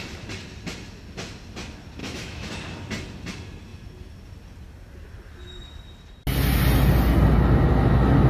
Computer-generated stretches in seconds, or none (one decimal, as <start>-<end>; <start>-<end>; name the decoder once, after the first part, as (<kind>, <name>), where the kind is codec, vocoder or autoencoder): 2.0-2.5 (autoencoder, DAC-VAE)